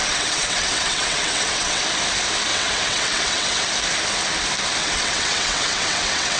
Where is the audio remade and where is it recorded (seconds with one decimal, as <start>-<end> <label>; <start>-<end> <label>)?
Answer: 0.0-1.8 remade; 1.8-2.5 recorded; 2.5-3.7 remade; 3.7-4.8 recorded; 4.8-6.4 remade